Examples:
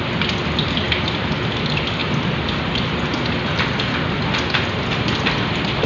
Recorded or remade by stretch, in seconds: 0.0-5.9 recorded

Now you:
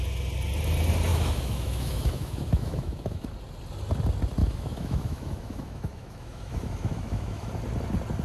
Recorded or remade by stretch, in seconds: 0.0-1.1 recorded; 1.1-3.3 remade; 3.3-4.4 recorded; 4.4-7.5 remade; 7.5-8.2 recorded

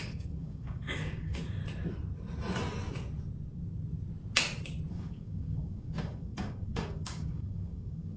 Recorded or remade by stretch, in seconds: 0.0-1.6 remade; 1.6-4.9 recorded; 4.9-8.2 remade

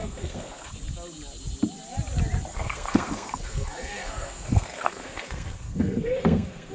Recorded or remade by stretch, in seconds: 0.0-0.7 remade; 0.7-2.5 recorded; 2.5-6.7 remade

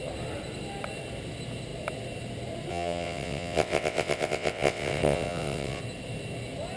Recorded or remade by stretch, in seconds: 0.0-2.7 recorded; 2.7-5.8 remade; 5.8-6.8 recorded

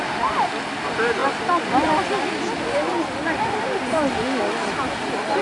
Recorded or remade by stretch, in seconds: 0.0-1.2 recorded; 1.2-4.4 remade; 4.4-5.4 recorded